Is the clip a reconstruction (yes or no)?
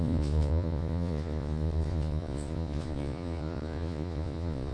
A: yes